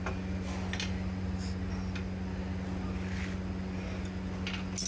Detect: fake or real real